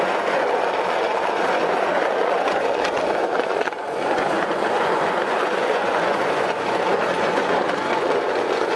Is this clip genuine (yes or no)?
no